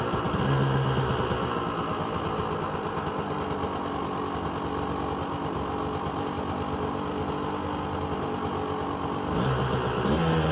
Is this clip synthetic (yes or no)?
no